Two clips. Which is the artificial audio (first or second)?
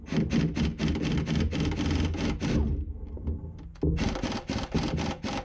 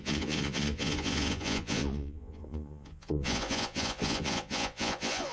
second